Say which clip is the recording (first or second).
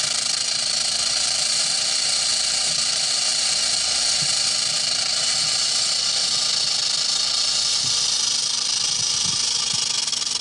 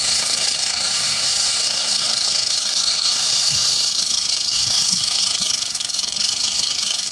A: first